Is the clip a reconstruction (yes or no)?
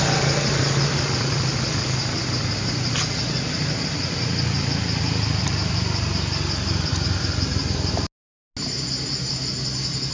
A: no